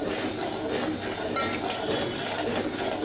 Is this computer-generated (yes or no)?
no